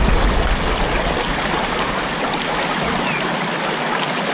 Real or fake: real